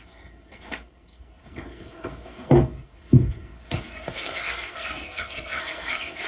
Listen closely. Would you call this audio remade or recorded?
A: remade